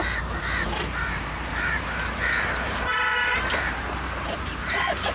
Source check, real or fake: fake